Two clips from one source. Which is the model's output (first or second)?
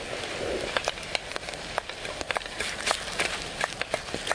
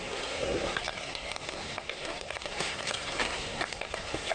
second